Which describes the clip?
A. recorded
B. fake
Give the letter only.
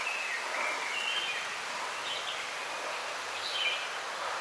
A